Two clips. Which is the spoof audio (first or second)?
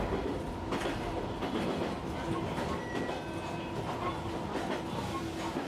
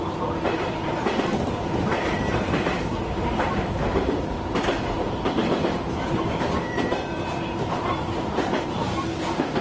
second